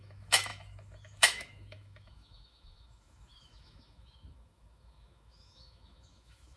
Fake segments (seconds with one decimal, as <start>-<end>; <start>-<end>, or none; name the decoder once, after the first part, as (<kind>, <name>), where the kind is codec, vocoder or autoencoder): 0.0-6.6 (autoencoder, DAC-VAE)